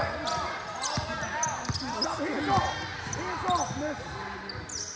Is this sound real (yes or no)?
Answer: yes